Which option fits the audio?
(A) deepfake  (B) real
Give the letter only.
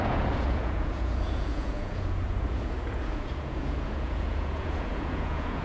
A